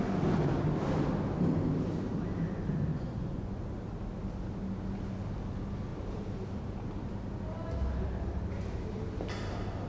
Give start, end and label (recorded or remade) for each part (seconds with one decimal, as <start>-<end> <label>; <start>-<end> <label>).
0.0-2.9 recorded; 2.9-3.6 remade; 3.6-9.9 recorded

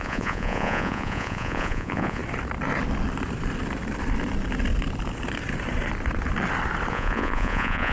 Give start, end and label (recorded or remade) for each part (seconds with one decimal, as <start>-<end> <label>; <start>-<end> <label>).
0.0-2.2 remade; 2.2-6.9 recorded; 6.9-7.9 remade

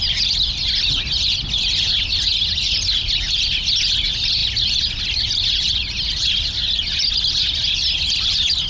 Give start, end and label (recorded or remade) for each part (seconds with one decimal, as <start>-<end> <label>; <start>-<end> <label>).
0.0-8.7 recorded